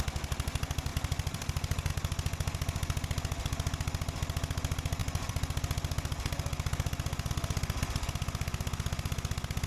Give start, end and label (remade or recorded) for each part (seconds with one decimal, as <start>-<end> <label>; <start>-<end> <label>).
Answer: 0.0-0.9 recorded; 0.9-1.9 remade; 1.9-5.0 recorded; 5.0-7.3 remade; 7.3-9.7 recorded